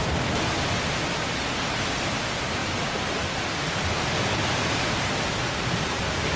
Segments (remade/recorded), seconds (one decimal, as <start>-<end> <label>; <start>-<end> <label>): 0.0-6.4 recorded